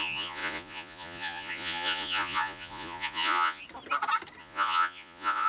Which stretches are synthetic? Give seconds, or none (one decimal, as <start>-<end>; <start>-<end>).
0.0-3.6; 4.4-5.5